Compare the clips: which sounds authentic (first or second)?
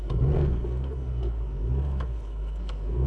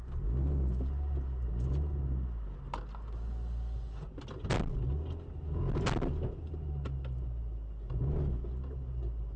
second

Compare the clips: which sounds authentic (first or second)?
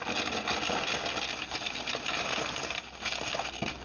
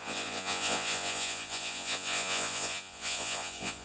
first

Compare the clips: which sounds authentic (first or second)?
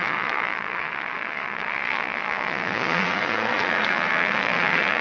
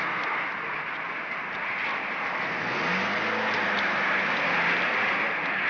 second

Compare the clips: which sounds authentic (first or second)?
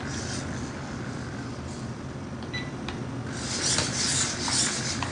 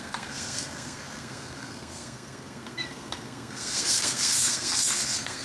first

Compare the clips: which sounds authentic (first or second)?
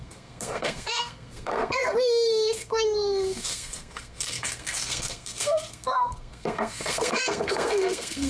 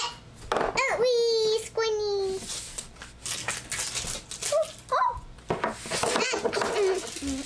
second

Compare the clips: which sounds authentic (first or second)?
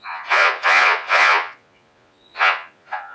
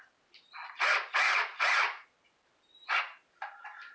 second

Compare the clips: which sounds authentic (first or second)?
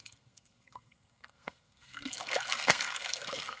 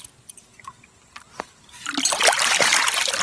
second